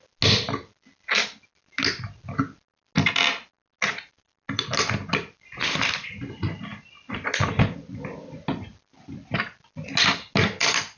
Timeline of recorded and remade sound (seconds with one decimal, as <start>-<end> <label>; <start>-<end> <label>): 0.0-11.0 recorded

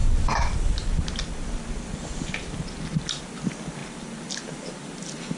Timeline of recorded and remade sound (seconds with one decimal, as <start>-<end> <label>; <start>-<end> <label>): 0.0-5.4 remade

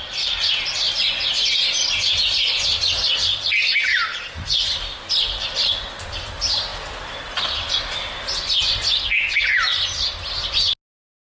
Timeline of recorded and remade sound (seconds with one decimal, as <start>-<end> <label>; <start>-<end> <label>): 0.0-11.2 recorded

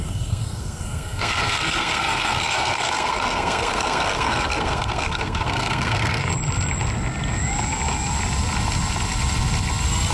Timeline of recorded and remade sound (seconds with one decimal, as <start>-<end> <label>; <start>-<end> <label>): 0.0-6.3 remade; 6.3-10.1 recorded

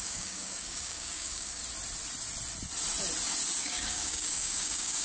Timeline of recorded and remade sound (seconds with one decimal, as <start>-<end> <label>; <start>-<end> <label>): 0.0-1.6 remade; 1.6-3.6 recorded; 3.6-5.0 remade

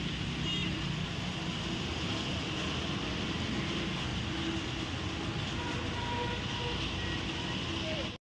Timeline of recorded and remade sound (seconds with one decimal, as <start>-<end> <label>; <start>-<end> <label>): 0.0-0.6 recorded; 0.6-1.5 remade; 1.5-4.1 recorded; 4.1-6.0 remade; 6.0-8.3 recorded